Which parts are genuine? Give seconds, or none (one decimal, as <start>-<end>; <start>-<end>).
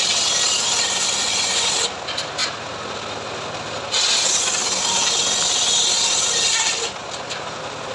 0.0-1.2; 1.7-7.9